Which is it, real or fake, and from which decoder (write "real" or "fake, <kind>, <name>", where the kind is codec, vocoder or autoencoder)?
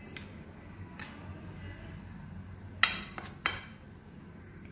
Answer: real